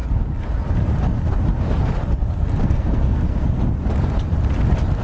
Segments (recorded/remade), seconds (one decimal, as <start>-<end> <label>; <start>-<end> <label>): 0.0-2.6 recorded; 2.6-3.6 remade; 3.6-5.0 recorded

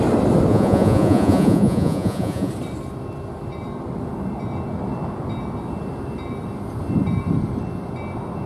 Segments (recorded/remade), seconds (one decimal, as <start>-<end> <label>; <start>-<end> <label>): 0.0-0.5 recorded; 0.5-2.5 remade; 2.5-8.5 recorded

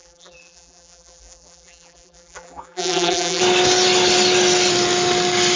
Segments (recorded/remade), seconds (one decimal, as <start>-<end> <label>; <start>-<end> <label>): 0.0-3.4 remade; 3.4-5.6 recorded

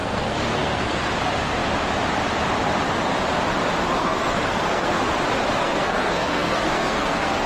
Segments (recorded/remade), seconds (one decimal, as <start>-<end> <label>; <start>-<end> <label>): 0.0-1.1 remade; 1.1-4.0 recorded; 4.0-5.1 remade; 5.1-5.6 recorded; 5.6-7.5 remade

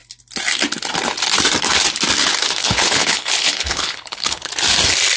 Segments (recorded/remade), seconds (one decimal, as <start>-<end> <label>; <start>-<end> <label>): 0.0-2.6 recorded; 2.6-4.5 remade; 4.5-5.2 recorded